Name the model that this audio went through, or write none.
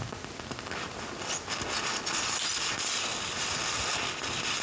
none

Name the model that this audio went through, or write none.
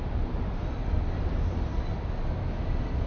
none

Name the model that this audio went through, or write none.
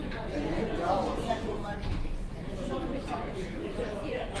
vocoder, Vocos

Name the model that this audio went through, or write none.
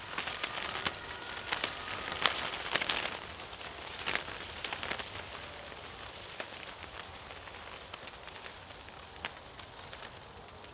none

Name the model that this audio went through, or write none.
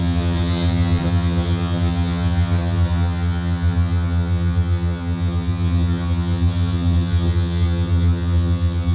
vocoder, HiFi-GAN